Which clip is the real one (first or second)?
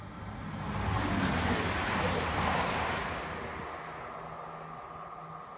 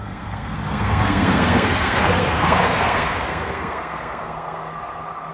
first